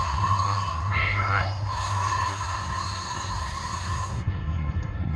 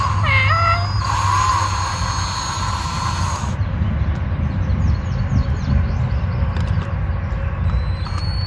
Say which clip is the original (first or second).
second